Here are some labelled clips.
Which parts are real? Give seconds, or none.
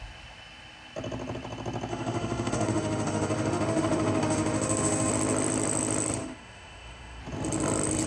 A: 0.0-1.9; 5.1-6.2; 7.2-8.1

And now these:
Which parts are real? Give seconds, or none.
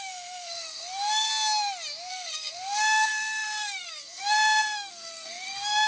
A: 1.3-2.1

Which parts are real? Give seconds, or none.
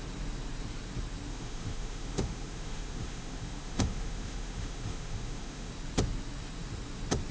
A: 0.0-1.3; 5.7-7.3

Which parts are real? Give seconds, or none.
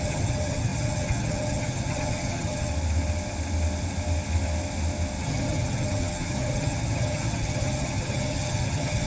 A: 2.7-5.2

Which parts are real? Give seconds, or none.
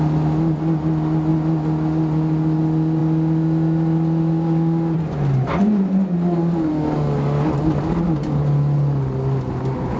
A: 0.0-10.0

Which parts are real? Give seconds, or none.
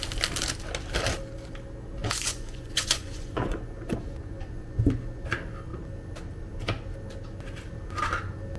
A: 0.0-2.0; 5.3-8.6